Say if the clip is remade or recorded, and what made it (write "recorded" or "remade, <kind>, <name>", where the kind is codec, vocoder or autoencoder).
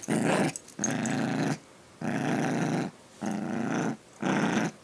recorded